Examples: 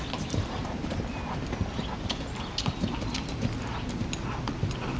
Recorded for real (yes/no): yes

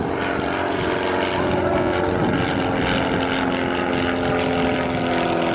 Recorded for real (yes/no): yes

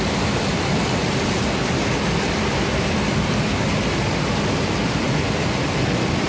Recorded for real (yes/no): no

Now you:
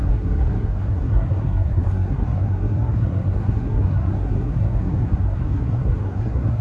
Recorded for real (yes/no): no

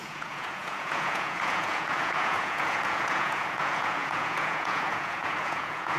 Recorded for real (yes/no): no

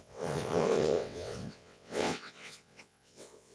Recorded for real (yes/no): no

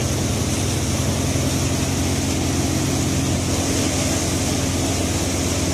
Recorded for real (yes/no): yes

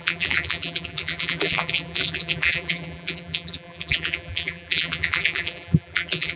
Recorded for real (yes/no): no